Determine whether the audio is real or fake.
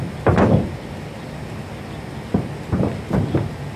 real